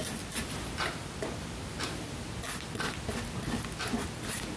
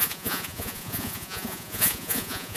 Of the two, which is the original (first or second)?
first